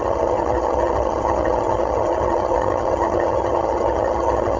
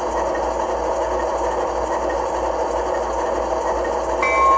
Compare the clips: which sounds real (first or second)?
second